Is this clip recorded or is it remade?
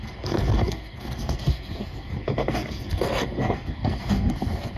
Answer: remade